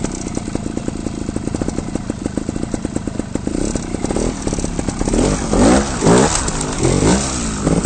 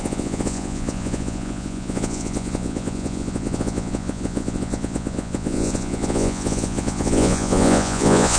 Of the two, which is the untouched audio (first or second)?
first